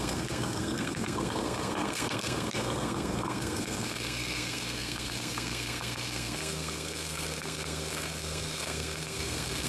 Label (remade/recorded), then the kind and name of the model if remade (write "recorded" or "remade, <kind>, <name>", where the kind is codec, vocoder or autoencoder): remade, codec, SNAC